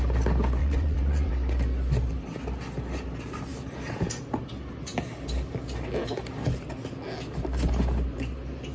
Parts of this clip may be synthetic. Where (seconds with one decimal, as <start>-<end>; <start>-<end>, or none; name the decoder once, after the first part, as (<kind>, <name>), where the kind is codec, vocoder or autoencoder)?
0.6-1.3 (vocoder, WaveNeXt)